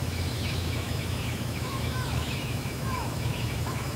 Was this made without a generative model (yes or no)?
no